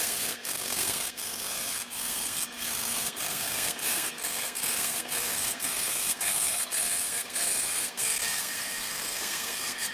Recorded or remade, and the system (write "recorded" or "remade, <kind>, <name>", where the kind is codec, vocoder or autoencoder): remade, codec, SNAC